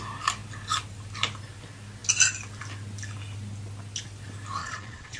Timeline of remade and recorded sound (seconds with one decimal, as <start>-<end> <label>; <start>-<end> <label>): 0.0-4.6 recorded; 4.6-5.2 remade